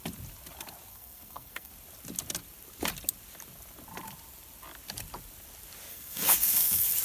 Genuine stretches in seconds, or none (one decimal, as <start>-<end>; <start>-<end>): 0.0-0.9; 1.7-5.9